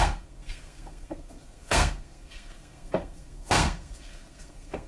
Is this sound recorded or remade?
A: remade